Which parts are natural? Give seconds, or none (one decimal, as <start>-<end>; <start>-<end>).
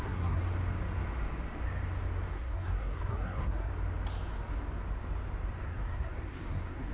0.4-2.3; 3.7-5.6